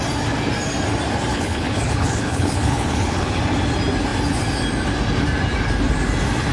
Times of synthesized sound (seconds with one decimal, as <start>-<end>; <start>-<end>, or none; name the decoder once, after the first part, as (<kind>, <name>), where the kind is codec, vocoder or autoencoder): 1.3-3.4 (codec, HILCodec)